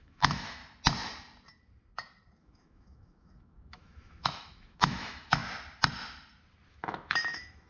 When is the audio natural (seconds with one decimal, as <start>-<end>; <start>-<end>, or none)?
0.6-2.4; 5.4-6.7

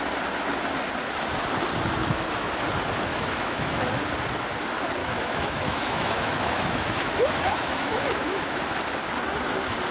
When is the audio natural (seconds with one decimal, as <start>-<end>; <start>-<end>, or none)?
0.0-2.0; 2.5-3.1; 3.8-5.0; 8.6-9.9

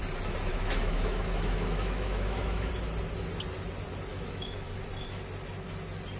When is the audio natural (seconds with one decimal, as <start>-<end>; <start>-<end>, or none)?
0.0-0.5; 2.7-4.1; 4.7-6.2

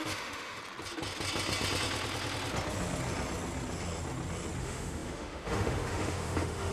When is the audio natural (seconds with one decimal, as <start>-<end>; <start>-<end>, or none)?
0.6-4.6

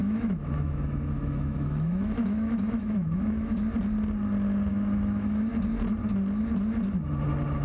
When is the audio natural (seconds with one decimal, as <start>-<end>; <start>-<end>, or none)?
3.6-4.7; 5.5-7.6

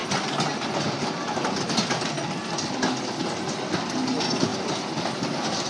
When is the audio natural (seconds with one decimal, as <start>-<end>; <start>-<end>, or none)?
0.0-5.7